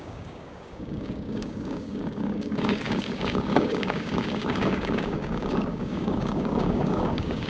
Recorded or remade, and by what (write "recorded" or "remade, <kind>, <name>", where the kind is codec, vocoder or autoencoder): remade, codec, DAC